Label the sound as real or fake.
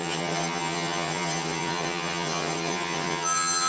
fake